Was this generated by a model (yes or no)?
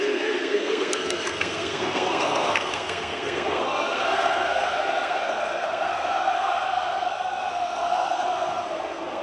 yes